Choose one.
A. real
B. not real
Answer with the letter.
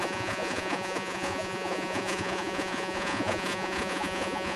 B